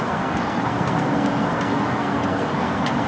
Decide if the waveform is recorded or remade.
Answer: remade